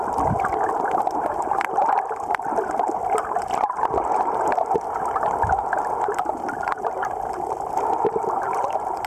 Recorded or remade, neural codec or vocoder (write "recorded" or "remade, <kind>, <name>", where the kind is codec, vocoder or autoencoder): recorded